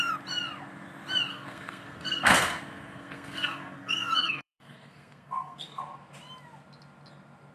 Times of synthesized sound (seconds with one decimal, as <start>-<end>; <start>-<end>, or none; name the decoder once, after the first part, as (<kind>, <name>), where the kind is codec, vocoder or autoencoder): 1.3-5.8 (codec, SNAC)